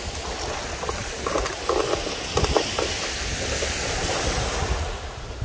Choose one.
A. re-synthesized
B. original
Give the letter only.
B